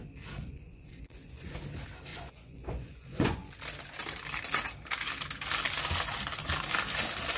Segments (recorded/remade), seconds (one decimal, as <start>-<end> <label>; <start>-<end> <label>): 0.0-0.4 recorded; 0.4-1.6 remade; 1.6-2.1 recorded; 2.1-3.5 remade; 3.5-7.4 recorded